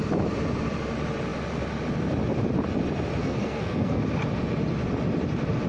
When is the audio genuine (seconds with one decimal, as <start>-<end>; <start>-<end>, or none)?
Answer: 0.0-3.2; 4.0-5.7

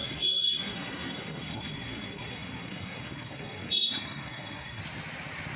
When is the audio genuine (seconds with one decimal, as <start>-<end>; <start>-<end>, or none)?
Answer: 4.8-5.6